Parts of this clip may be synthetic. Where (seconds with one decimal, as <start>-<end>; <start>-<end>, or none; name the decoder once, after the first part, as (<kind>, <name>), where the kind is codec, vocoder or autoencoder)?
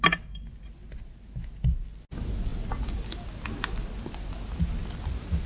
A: none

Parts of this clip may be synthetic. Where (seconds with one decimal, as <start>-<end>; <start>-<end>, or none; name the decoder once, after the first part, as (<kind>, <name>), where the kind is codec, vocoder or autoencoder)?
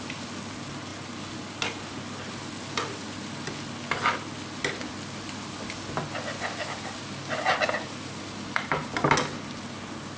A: none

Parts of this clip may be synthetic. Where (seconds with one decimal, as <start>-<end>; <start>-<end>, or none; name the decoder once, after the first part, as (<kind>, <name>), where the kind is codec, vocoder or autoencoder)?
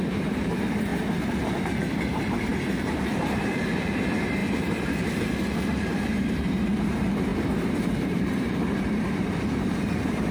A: 0.0-0.9 (vocoder, BigVGAN v2); 1.7-10.3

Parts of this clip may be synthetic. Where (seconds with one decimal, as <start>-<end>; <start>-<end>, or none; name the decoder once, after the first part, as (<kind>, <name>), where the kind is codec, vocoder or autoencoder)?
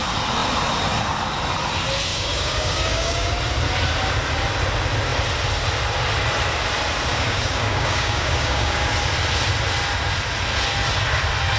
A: 2.1-3.3 (codec, DAC); 7.1-8.9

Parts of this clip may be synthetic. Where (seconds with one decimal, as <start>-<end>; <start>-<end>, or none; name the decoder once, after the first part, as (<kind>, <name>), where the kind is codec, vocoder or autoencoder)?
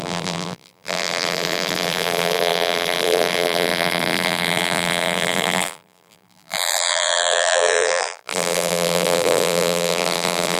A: 0.0-10.6 (vocoder, BigVGAN v2)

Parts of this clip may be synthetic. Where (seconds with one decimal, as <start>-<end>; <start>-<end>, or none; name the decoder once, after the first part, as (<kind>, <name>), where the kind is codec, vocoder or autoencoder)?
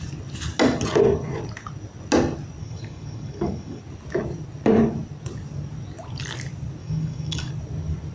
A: 2.6-3.8 (codec, DAC); 6.8-7.5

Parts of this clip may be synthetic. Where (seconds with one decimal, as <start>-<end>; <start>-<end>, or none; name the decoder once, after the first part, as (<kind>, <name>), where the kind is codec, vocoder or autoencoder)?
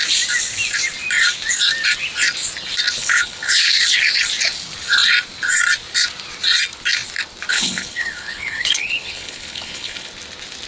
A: 3.0-3.7 (codec, HILCodec); 7.5-10.1